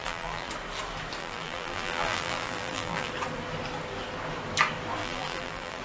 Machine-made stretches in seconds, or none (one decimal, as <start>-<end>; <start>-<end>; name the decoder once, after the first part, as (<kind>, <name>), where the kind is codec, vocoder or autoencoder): 0.0-0.5 (vocoder, BigVGAN v2); 1.2-3.1; 5.0-5.8